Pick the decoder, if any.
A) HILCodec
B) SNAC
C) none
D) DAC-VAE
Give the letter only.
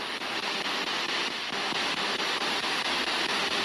C